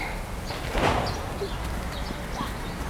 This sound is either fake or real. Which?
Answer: real